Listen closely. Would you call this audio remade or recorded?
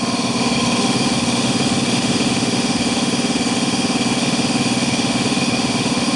remade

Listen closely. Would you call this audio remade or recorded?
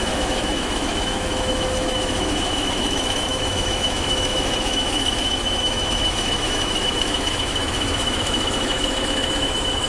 remade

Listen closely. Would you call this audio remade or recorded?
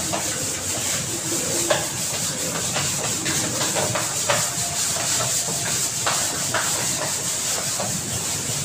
recorded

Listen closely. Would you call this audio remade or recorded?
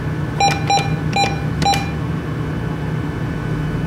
recorded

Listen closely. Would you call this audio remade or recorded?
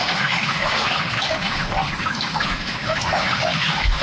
remade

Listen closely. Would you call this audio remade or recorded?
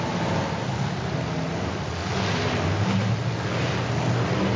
recorded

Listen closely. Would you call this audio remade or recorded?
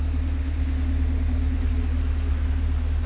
recorded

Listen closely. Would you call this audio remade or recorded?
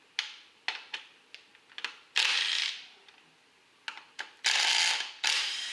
recorded